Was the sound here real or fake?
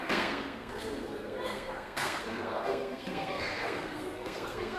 fake